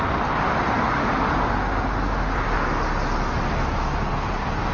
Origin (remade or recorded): recorded